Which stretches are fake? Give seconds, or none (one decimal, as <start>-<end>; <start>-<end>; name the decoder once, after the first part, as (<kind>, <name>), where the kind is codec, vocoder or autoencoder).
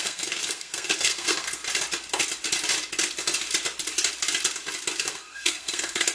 0.0-1.6 (codec, SNAC); 5.0-6.1